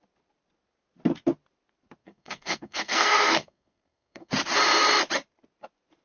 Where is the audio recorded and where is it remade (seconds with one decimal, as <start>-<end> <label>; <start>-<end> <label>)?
0.0-2.0 recorded; 2.0-4.3 remade; 4.3-6.0 recorded